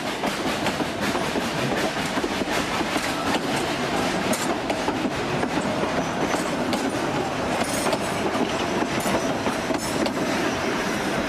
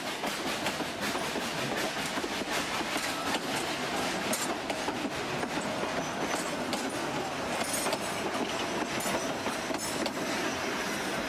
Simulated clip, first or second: first